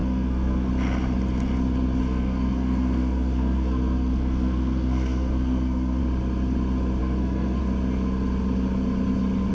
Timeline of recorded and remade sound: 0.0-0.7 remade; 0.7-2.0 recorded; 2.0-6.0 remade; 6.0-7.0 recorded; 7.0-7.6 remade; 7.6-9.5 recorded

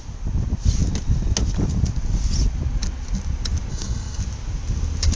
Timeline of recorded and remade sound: 0.0-3.7 recorded; 3.7-4.2 remade; 4.2-5.2 recorded

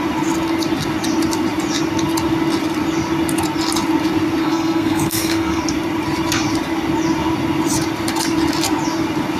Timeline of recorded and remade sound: 0.0-4.4 recorded; 4.4-5.6 remade; 5.6-9.4 recorded

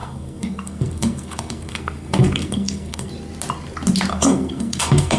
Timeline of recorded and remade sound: 0.0-3.1 remade; 3.1-4.1 recorded; 4.1-5.2 remade

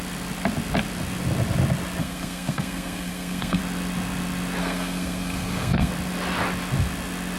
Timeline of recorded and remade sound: 0.0-2.0 recorded; 2.0-3.6 remade; 3.6-4.6 recorded; 4.6-5.9 remade; 5.9-7.4 recorded

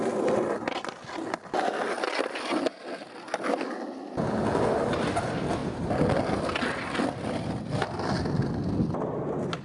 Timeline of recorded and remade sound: 0.0-9.6 recorded